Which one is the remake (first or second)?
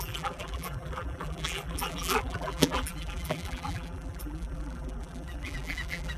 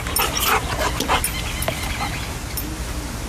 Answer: first